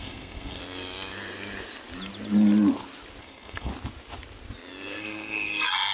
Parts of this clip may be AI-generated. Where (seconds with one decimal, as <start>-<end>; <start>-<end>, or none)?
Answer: 0.0-0.6; 3.2-3.7; 5.0-5.9